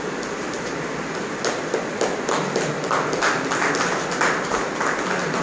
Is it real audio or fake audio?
real